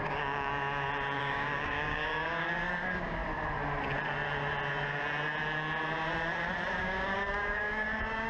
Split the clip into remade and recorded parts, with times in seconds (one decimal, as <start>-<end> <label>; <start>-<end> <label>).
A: 0.0-0.5 remade; 0.5-1.2 recorded; 1.2-3.2 remade; 3.2-6.8 recorded; 6.8-8.3 remade